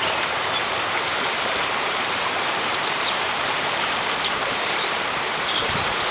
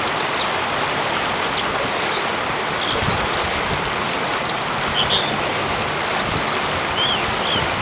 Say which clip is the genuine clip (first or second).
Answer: second